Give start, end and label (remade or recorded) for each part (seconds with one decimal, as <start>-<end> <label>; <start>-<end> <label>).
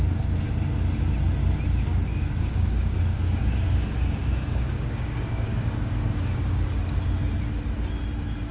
0.0-1.9 recorded; 1.9-6.8 remade; 6.8-8.5 recorded